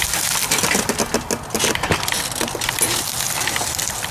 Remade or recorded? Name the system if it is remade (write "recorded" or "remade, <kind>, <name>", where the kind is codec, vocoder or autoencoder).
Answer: recorded